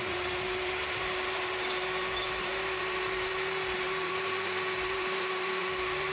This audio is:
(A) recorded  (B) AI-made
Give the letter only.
B